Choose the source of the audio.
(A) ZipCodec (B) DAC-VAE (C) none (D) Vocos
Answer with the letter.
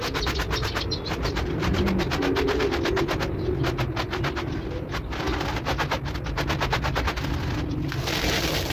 C